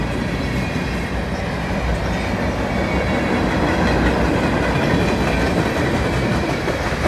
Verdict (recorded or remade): recorded